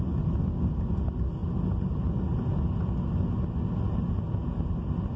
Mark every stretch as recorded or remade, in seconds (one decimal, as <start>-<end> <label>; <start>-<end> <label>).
0.0-5.2 recorded